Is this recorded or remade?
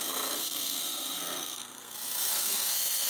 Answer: remade